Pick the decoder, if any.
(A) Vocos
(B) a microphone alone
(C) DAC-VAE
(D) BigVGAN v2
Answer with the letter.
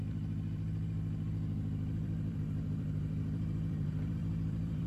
D